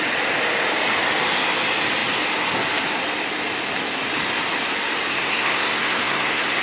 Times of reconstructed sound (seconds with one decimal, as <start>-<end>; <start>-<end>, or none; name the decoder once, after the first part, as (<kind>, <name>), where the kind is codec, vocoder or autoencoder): 5.1-6.6 (codec, SNAC)